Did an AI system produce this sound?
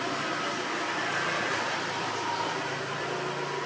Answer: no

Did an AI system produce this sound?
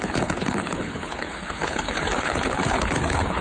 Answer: yes